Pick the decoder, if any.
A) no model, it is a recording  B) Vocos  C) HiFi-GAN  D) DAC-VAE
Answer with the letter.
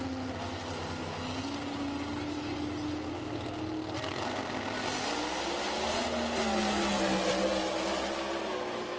A